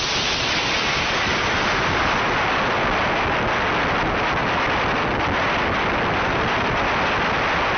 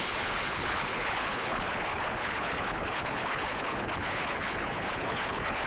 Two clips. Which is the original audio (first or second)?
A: first